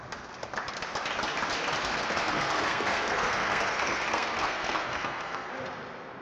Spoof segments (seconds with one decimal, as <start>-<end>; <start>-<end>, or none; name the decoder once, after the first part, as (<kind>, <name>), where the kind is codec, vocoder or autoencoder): 1.8-5.5 (codec, SNAC)